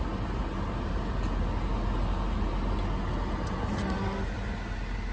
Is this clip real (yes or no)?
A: yes